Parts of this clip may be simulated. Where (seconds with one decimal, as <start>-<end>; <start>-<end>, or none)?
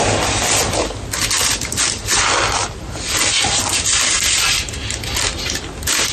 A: none